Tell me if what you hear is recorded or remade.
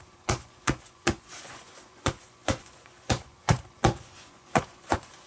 remade